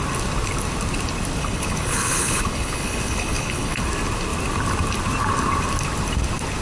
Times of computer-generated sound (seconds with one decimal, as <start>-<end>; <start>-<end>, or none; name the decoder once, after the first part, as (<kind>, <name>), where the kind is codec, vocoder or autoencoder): 1.4-3.9 (codec, HILCodec)